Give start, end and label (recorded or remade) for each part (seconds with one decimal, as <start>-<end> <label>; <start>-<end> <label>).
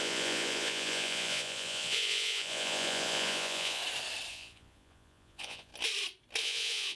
0.0-3.8 remade; 3.8-4.3 recorded; 4.3-5.7 remade; 5.7-6.4 recorded; 6.4-7.0 remade